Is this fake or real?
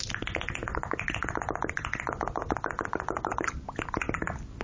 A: real